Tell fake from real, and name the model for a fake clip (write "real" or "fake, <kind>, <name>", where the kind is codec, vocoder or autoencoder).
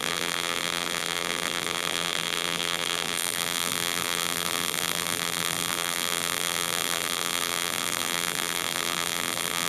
fake, vocoder, BigVGAN v2